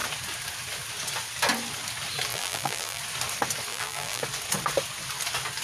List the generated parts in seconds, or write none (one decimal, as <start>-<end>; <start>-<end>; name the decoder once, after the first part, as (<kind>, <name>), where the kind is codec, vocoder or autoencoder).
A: 2.3-3.0 (vocoder, BigVGAN v2); 3.7-4.2